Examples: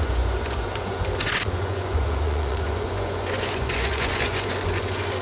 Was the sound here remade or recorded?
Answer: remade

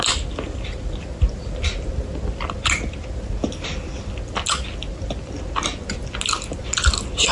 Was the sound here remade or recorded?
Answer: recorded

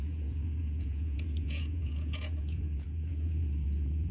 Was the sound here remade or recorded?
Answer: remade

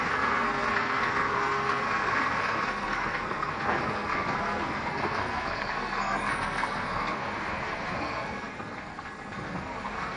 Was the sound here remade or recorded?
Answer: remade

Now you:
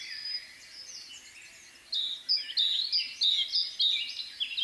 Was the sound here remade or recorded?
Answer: recorded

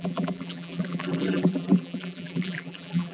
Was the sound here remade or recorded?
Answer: remade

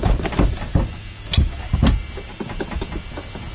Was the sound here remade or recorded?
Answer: recorded